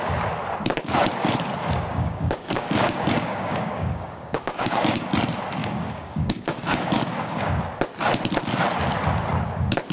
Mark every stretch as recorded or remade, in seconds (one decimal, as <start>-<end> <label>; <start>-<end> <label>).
0.0-1.9 recorded; 1.9-5.1 remade; 5.1-5.6 recorded; 5.6-7.6 remade; 7.6-9.9 recorded